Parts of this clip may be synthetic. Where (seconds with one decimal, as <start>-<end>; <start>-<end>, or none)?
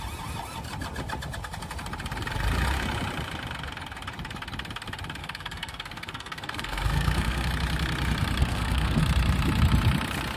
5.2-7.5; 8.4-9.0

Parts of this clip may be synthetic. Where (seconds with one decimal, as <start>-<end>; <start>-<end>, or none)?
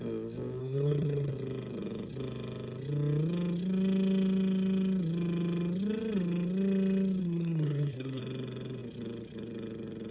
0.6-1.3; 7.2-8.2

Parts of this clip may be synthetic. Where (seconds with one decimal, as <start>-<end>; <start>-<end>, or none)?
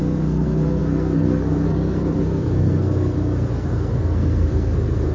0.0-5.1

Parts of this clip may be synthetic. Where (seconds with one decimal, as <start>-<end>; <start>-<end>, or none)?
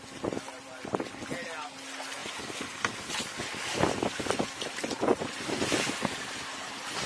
none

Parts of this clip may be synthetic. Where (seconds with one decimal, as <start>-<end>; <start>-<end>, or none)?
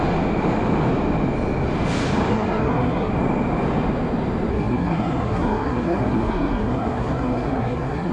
2.3-3.1; 4.5-8.1